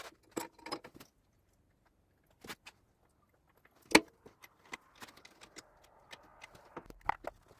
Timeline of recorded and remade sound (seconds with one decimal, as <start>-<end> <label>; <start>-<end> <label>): 0.0-7.6 recorded